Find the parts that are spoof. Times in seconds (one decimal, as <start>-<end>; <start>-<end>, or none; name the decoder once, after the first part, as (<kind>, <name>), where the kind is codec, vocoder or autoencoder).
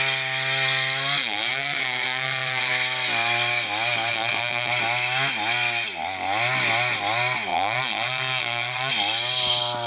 1.2-2.7 (vocoder, WaveNeXt); 4.1-4.7; 7.5-8.9